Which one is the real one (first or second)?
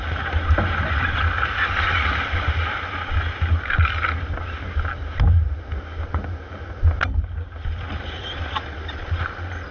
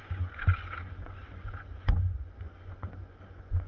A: first